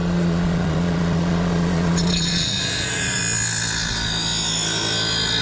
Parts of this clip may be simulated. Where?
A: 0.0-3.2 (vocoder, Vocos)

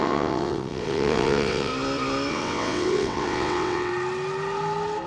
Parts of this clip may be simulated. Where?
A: 0.0-1.7 (vocoder, WaveNeXt); 2.3-3.9

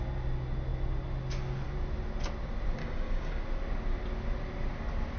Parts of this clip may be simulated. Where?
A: 2.8-3.4 (codec, DAC)

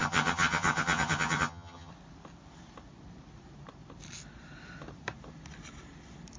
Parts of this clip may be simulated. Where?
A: 0.0-1.9 (vocoder, HiFi-GAN)

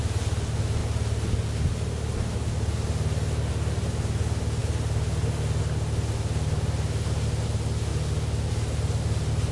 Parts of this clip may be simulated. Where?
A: none

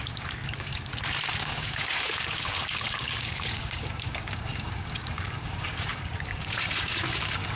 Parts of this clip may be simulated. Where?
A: 0.0-0.9 (codec, DAC); 1.4-7.6